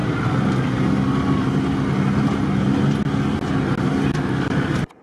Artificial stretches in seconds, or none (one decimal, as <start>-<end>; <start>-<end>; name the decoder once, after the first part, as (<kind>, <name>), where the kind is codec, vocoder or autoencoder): none